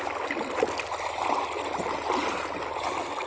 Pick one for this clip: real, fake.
real